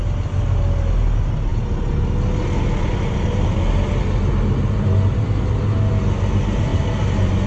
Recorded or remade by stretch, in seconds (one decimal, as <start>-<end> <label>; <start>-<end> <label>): 0.0-7.5 recorded

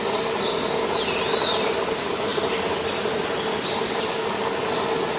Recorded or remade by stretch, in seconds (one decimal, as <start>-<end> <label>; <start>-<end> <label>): 0.0-5.2 recorded